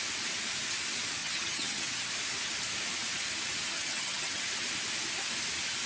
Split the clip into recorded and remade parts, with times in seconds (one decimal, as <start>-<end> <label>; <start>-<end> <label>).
0.0-1.2 recorded; 1.2-2.1 remade; 2.1-3.7 recorded; 3.7-4.4 remade; 4.4-5.9 recorded